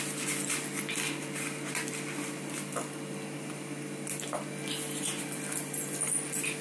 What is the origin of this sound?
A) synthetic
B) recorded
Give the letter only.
B